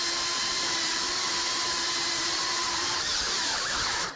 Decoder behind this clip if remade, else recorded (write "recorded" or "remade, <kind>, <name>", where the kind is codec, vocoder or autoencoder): remade, vocoder, BigVGAN v2